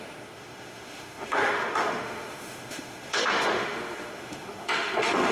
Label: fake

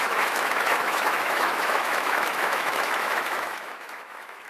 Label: fake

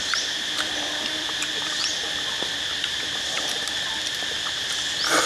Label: real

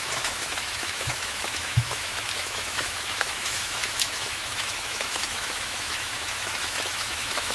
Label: fake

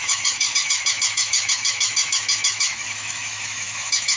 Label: fake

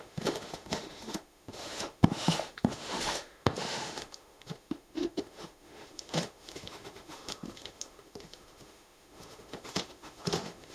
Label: fake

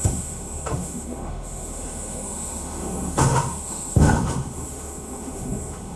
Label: fake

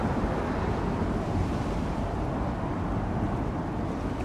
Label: real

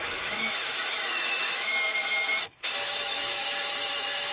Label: fake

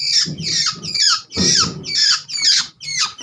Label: real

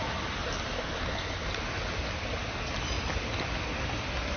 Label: real